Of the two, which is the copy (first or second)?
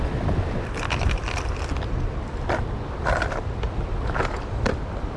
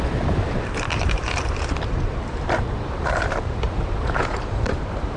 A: second